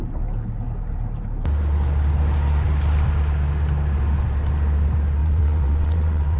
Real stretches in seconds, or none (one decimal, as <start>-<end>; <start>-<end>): 0.0-5.2

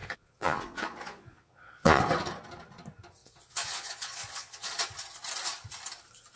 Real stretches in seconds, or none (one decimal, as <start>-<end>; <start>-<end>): 2.0-3.2; 4.7-6.4

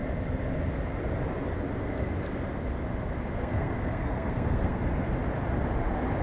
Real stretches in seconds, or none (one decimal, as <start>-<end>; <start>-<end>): 0.0-3.4; 4.8-6.2

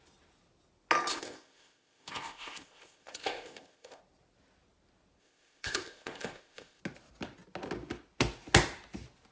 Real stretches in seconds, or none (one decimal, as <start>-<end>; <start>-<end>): 0.0-1.1; 4.0-5.2; 6.8-9.3

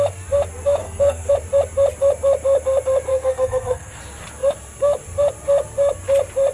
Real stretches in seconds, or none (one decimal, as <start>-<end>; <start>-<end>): 0.0-0.8; 1.3-3.1; 4.0-6.5

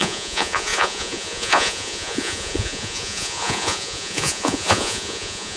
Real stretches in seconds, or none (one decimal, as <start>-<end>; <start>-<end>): none

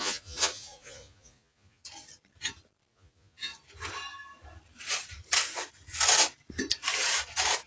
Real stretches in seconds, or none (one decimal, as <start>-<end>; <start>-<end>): 1.8-2.9; 3.5-7.7

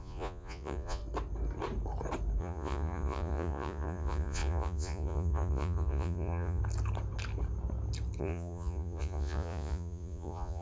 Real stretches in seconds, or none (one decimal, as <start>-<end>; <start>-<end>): 1.0-2.4; 6.6-8.2